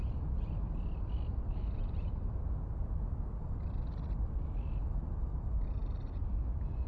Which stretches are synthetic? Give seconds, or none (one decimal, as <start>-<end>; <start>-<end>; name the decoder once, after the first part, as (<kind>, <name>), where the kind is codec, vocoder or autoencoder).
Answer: none